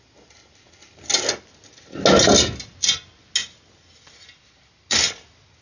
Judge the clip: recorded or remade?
recorded